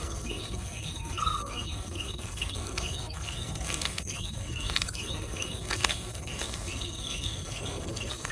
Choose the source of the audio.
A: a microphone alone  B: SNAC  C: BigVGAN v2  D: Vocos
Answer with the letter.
B